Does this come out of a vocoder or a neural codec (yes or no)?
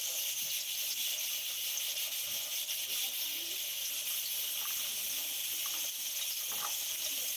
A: no